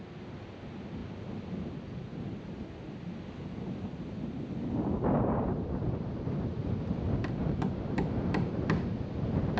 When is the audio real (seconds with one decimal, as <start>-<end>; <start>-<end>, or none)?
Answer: 0.0-7.2; 8.6-9.6